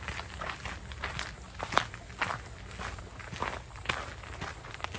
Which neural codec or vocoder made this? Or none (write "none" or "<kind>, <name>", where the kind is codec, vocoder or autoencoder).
none